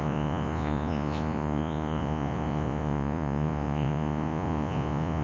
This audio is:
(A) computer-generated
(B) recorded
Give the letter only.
A